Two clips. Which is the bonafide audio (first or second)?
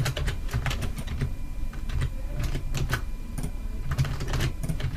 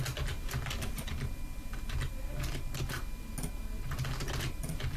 second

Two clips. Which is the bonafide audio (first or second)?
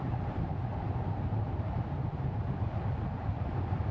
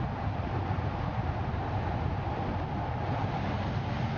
second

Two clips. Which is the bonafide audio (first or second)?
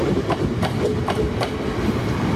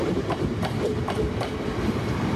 first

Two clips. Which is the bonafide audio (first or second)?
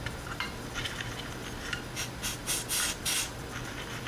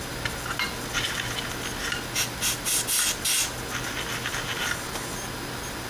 second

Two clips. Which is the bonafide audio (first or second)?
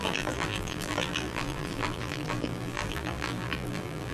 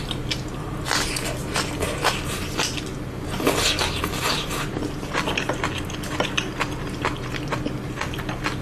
second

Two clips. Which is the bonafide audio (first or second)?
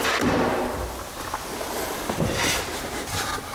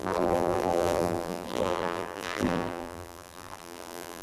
first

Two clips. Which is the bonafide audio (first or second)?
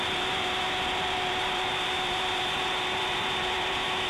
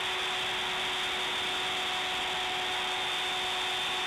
second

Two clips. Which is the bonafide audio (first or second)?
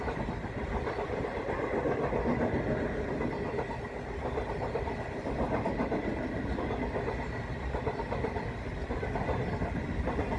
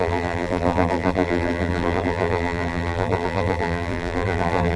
first